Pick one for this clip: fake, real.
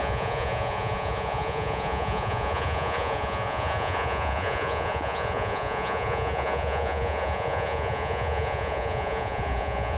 fake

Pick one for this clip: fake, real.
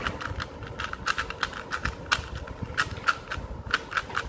real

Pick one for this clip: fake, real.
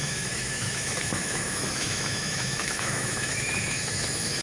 fake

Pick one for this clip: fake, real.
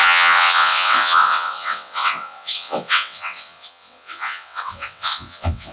fake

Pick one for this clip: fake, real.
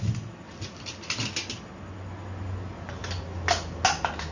real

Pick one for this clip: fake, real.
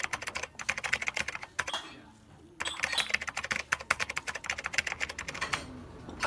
real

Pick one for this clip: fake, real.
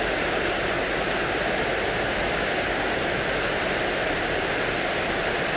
real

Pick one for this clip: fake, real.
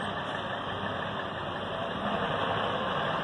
fake